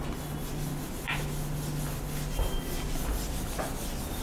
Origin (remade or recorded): recorded